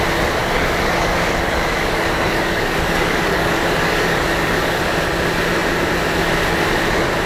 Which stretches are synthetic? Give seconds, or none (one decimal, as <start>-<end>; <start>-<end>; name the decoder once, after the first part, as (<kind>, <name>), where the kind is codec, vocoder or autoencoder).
0.4-4.8 (codec, DAC)